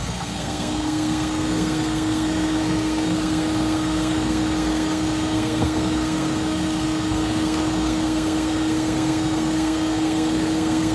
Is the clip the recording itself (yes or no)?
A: no